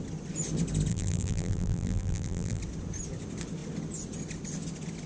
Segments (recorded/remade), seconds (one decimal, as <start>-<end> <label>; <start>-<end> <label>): 0.0-0.9 recorded; 0.9-2.6 remade; 2.6-5.1 recorded

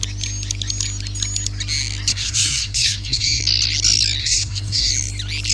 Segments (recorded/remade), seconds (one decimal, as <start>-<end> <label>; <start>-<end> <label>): 0.0-2.1 recorded; 2.1-3.4 remade; 3.4-4.2 recorded; 4.2-4.9 remade; 4.9-5.5 recorded

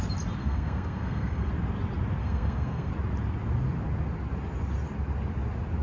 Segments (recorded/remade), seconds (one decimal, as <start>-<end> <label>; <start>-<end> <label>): 0.0-0.4 recorded; 0.4-1.5 remade; 1.5-2.2 recorded; 2.2-2.9 remade; 2.9-5.8 recorded

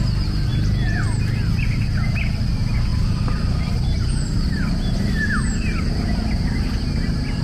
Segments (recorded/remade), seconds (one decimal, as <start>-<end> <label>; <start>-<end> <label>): 0.0-2.9 recorded; 2.9-5.9 remade; 5.9-7.4 recorded